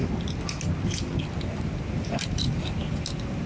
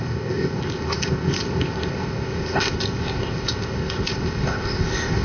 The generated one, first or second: second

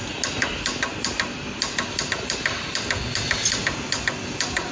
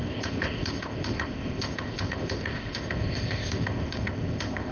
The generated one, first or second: second